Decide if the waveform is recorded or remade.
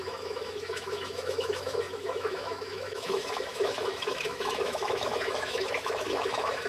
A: remade